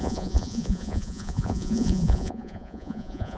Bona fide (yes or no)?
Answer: no